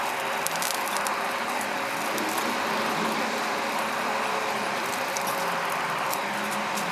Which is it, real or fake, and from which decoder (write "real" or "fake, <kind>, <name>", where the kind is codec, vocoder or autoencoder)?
real